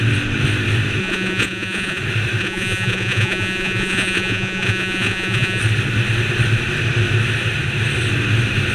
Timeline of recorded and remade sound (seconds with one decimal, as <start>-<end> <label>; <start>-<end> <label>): 0.0-1.0 recorded; 1.0-2.0 remade; 2.0-2.4 recorded; 2.4-5.6 remade; 5.6-8.7 recorded